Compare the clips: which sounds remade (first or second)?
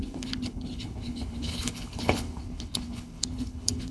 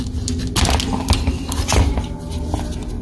first